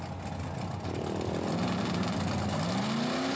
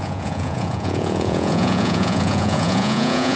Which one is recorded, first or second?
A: first